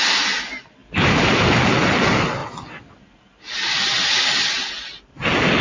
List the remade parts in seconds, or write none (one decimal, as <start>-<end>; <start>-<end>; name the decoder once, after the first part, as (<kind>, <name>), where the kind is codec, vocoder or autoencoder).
0.8-1.6 (vocoder, BigVGAN v2)